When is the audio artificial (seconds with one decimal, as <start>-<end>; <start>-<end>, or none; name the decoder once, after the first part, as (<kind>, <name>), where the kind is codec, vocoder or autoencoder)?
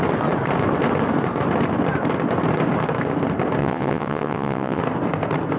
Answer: 3.6-4.8 (vocoder, WaveNeXt)